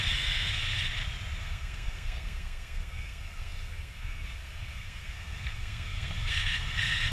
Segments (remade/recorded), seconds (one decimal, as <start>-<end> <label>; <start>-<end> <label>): 0.0-0.6 remade; 0.6-1.4 recorded; 1.4-7.1 remade